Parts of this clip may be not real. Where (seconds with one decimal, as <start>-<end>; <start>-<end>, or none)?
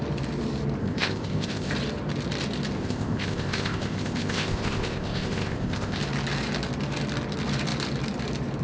0.8-1.7; 2.8-6.0